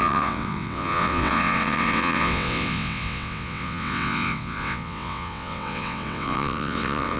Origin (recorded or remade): remade